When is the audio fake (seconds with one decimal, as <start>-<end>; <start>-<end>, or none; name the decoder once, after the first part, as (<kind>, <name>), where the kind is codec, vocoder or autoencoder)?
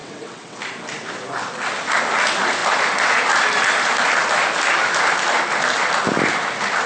0.0-0.6 (vocoder, WaveNeXt)